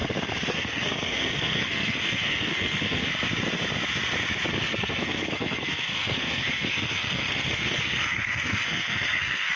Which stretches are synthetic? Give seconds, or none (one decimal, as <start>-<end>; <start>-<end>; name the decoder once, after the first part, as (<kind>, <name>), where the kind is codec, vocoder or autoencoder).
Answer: 0.5-3.1 (codec, SNAC); 4.5-9.6